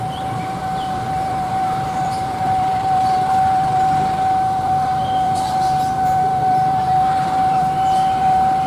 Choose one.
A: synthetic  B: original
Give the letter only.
A